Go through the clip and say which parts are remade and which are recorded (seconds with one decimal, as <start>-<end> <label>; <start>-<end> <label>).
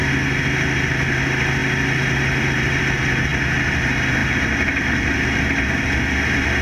0.0-6.6 recorded